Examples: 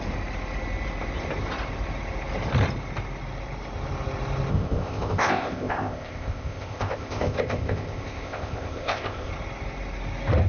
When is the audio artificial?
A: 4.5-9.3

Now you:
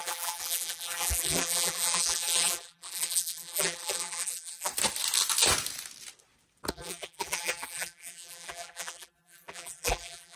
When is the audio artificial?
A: 0.0-4.7; 6.7-10.4

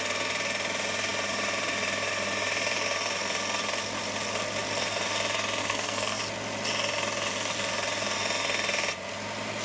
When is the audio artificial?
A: 5.6-6.2

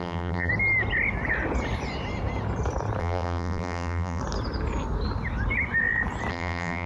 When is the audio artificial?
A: 0.0-0.5; 3.0-4.2; 6.3-6.9

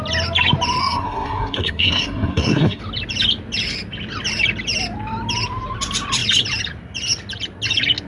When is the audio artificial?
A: 0.8-2.8

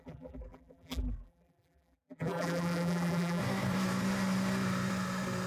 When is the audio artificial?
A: 0.0-3.4